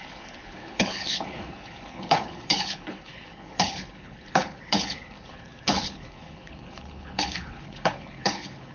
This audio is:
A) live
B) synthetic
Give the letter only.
B